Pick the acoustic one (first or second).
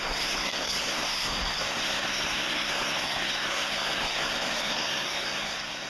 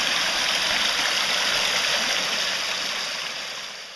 second